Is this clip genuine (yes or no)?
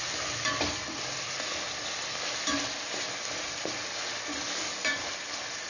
yes